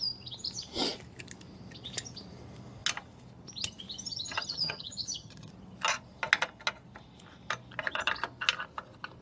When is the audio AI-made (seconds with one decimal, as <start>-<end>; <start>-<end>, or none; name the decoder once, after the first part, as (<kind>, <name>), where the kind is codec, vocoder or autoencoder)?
4.1-5.5 (vocoder, HiFi-GAN)